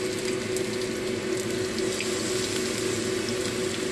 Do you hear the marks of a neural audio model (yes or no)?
no